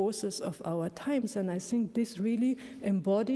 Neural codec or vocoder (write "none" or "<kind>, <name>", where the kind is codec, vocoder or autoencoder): none